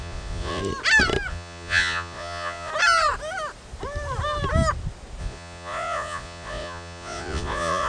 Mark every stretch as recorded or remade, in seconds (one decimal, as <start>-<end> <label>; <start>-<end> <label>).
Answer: 0.0-0.6 remade; 0.6-1.3 recorded; 1.3-2.7 remade; 2.7-5.2 recorded; 5.2-7.9 remade